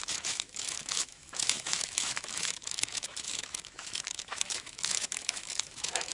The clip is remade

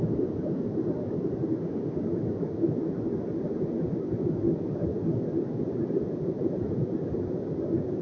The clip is recorded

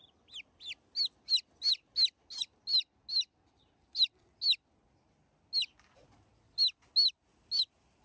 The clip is recorded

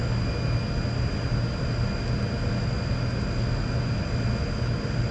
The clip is recorded